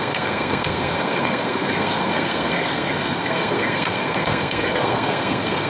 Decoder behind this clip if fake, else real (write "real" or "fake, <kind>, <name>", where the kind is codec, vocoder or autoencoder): fake, codec, SNAC